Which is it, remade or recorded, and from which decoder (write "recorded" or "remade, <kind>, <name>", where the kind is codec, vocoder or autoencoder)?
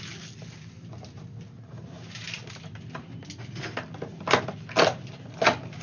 recorded